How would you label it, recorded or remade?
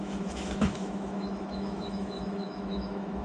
remade